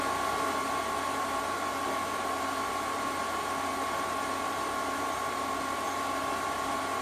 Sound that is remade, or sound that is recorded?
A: recorded